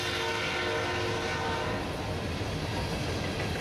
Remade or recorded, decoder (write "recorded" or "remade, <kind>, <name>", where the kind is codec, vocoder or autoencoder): recorded